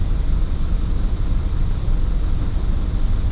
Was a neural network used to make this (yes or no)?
no